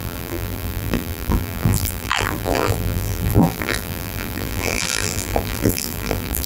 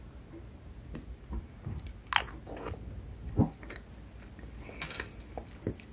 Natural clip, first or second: second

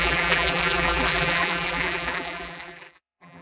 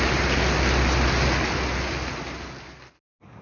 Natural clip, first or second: second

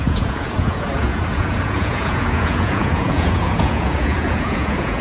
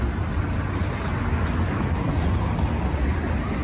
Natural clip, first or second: second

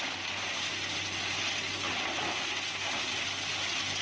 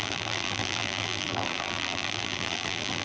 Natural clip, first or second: first